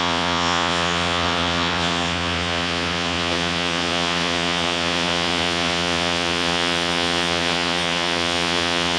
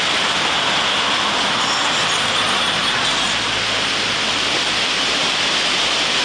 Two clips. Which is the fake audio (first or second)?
first